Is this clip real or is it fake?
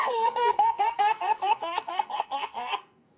fake